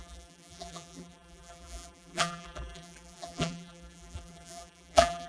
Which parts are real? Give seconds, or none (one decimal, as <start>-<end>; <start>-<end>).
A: none